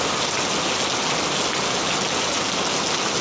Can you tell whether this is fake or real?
real